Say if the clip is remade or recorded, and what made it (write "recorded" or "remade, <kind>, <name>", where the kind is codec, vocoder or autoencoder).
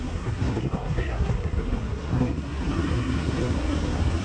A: remade, codec, SNAC